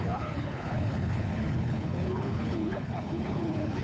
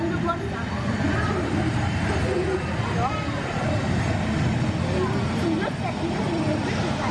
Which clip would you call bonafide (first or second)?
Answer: second